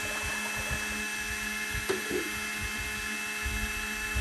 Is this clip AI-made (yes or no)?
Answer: no